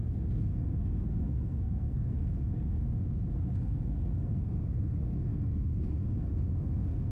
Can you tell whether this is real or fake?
fake